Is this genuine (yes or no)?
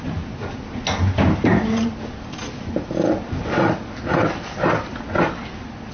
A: yes